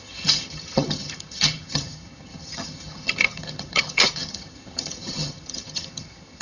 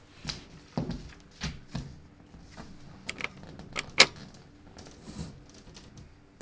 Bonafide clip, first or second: second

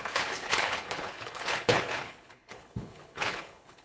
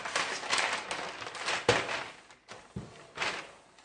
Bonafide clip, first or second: second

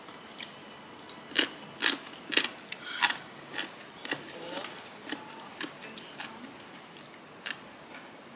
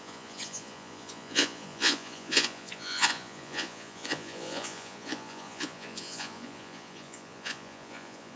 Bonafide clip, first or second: first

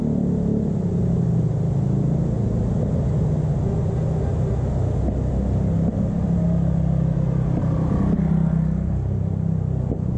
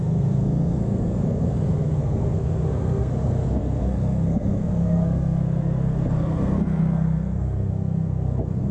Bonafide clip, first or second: first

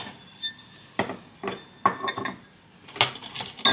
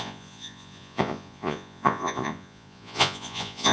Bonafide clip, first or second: first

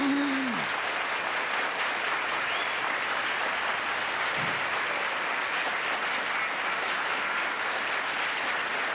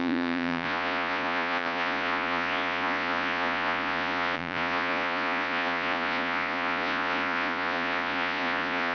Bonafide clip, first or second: first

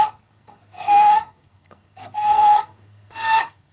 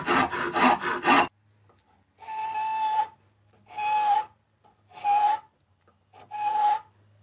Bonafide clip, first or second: second